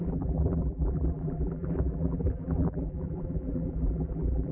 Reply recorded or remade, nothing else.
remade